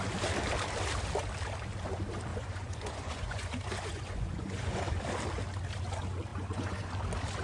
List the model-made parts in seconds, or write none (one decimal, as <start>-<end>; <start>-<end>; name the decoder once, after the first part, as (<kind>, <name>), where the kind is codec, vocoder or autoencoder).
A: 2.3-5.0 (vocoder, Vocos); 6.3-6.9